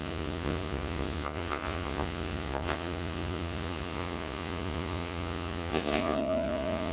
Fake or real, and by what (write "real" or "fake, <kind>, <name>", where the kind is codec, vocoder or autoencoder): fake, vocoder, Vocos